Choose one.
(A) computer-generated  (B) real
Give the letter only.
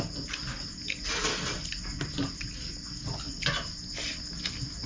B